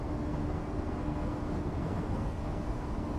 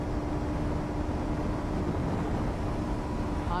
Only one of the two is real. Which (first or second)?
second